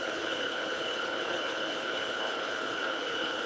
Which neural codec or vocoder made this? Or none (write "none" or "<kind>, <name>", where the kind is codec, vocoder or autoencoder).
codec, HILCodec